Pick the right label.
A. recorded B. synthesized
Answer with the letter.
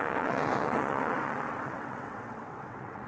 B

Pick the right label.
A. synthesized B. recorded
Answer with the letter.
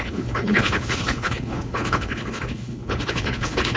A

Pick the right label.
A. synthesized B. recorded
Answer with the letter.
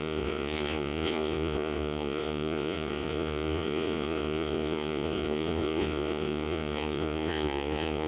A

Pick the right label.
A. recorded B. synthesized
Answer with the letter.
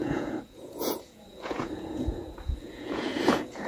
B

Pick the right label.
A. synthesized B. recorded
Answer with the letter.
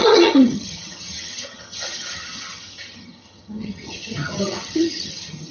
A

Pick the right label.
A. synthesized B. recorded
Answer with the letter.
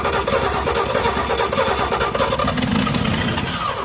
B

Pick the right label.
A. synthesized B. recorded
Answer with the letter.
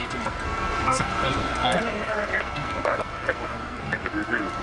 A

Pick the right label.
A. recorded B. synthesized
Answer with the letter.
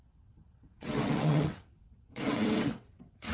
B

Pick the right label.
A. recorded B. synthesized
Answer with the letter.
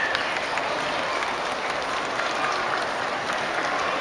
A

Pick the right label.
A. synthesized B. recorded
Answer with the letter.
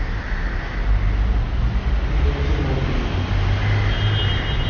B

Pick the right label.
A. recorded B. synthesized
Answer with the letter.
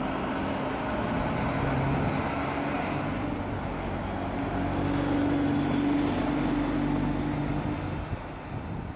A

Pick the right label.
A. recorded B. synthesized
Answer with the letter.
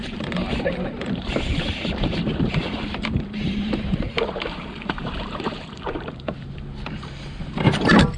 B